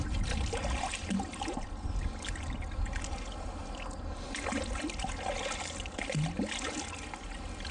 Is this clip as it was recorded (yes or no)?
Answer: yes